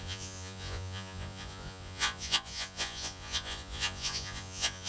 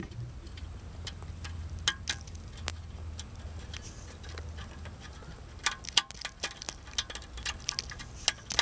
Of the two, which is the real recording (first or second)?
second